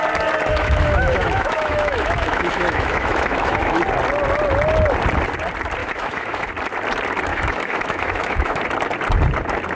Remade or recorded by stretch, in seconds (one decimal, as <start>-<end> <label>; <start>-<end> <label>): 0.0-0.5 recorded; 0.5-3.8 remade; 3.8-5.8 recorded; 5.8-6.5 remade; 6.5-7.3 recorded; 7.3-8.6 remade; 8.6-9.7 recorded